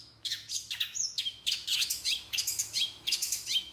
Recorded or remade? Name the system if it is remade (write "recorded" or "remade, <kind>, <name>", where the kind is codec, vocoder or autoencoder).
remade, autoencoder, DAC-VAE